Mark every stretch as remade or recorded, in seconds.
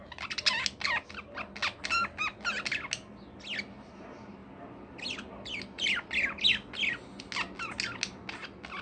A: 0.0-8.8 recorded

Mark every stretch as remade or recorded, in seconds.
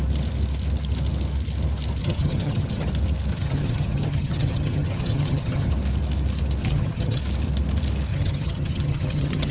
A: 0.0-2.0 recorded; 2.0-2.9 remade; 2.9-3.3 recorded; 3.3-5.7 remade; 5.7-6.6 recorded; 6.6-7.2 remade; 7.2-8.1 recorded; 8.1-9.5 remade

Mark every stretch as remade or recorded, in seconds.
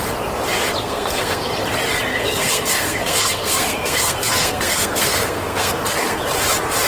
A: 0.0-0.8 recorded; 0.8-1.5 remade; 1.5-2.1 recorded; 2.1-6.2 remade; 6.2-6.9 recorded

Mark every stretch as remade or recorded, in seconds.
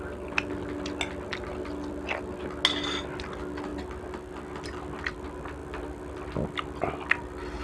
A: 0.0-3.7 recorded; 3.7-4.4 remade; 4.4-5.6 recorded; 5.6-6.3 remade; 6.3-7.6 recorded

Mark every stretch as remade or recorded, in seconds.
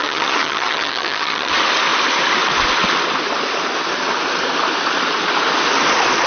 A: 0.0-1.5 remade; 1.5-6.3 recorded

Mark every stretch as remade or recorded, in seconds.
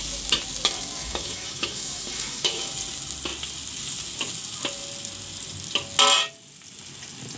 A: 0.0-1.0 recorded; 1.0-2.7 remade; 2.7-7.4 recorded